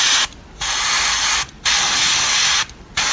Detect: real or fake real